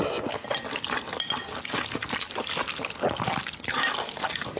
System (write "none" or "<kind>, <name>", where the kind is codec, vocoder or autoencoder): none